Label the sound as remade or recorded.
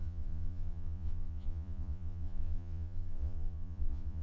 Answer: remade